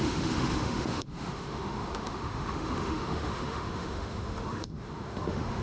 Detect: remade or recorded remade